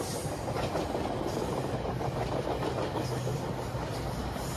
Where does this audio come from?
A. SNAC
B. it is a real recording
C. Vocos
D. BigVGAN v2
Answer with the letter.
B